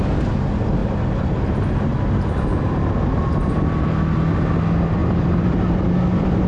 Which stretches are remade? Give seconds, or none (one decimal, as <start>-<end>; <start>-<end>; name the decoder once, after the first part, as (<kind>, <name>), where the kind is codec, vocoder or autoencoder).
0.8-1.3 (vocoder, BigVGAN v2); 1.9-2.6; 5.0-6.5